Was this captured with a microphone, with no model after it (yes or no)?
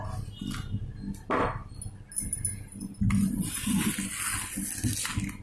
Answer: yes